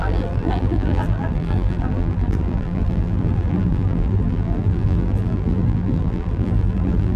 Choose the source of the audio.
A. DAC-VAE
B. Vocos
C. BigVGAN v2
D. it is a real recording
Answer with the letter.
C